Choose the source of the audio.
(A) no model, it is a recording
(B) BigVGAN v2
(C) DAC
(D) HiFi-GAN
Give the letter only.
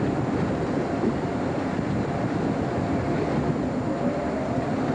A